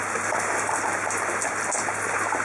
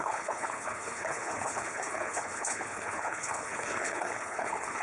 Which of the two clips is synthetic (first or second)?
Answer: second